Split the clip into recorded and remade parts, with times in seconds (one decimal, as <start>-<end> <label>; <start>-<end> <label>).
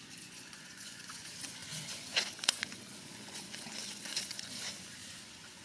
0.0-5.6 remade